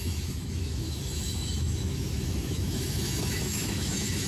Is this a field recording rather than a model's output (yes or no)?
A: no